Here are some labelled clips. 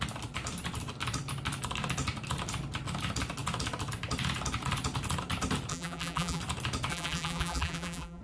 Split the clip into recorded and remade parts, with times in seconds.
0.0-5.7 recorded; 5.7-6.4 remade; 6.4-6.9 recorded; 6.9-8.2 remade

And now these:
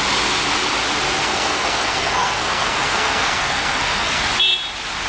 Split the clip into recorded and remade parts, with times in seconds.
0.0-1.2 recorded; 1.2-4.2 remade; 4.2-5.1 recorded

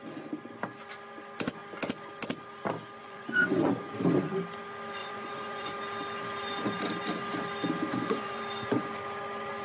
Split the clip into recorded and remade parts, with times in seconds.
0.0-3.0 recorded; 3.0-3.8 remade; 3.8-5.0 recorded; 5.0-5.7 remade; 5.7-7.9 recorded; 7.9-8.4 remade; 8.4-9.6 recorded

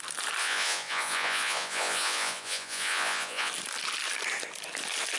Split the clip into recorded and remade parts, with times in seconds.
0.0-0.4 recorded; 0.4-3.5 remade; 3.5-5.2 recorded

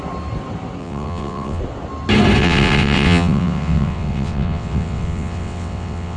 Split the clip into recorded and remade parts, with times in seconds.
0.0-0.8 recorded; 0.8-1.6 remade; 1.6-2.4 recorded; 2.4-6.2 remade

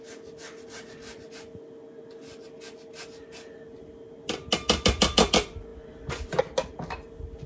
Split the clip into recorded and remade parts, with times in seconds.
0.0-7.5 recorded

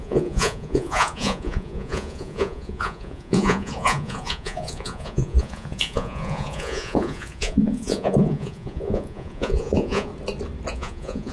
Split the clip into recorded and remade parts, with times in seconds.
0.0-10.1 remade; 10.1-10.7 recorded; 10.7-11.3 remade

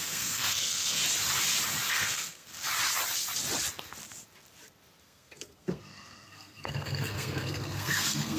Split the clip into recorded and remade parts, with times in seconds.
0.0-1.0 remade; 1.0-1.9 recorded; 1.9-2.5 remade; 2.5-5.0 recorded; 5.0-8.4 remade